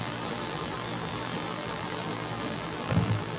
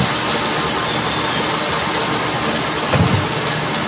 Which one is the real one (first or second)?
second